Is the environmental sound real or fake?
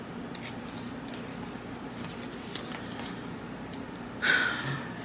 real